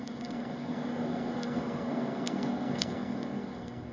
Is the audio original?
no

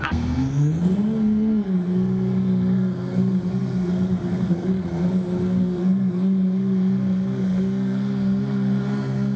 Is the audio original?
no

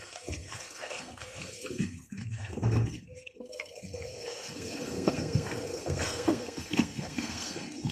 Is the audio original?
no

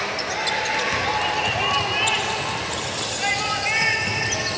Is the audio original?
yes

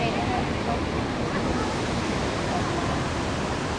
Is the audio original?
yes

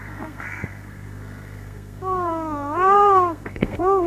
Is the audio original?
no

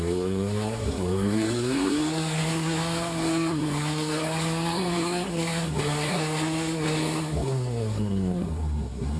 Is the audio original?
no